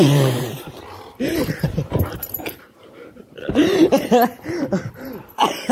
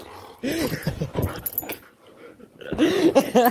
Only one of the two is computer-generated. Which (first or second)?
first